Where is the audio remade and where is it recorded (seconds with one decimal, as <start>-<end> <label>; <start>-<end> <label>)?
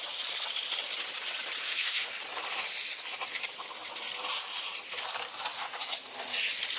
0.0-1.6 recorded; 1.6-2.1 remade; 2.1-6.8 recorded